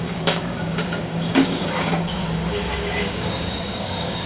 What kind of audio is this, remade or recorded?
remade